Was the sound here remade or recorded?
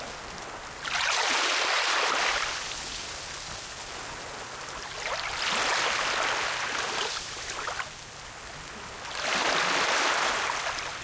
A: recorded